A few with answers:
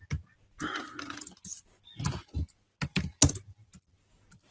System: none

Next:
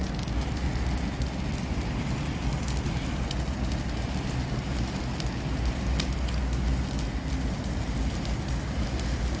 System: none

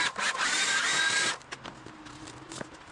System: none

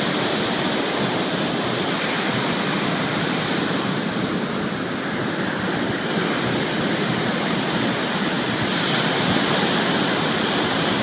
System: none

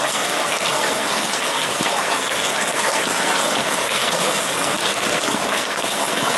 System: codec, SNAC